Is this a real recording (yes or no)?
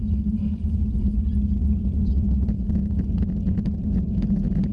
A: yes